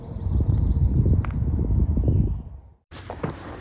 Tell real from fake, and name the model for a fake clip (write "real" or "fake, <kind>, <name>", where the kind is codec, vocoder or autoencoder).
real